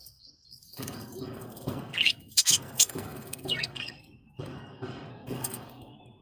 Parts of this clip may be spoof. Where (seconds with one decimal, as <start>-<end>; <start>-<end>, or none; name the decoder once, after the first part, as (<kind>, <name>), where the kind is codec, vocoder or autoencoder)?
0.0-6.2 (codec, SNAC)